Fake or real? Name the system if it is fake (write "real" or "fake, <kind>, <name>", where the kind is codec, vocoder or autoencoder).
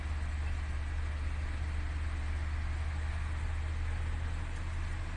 real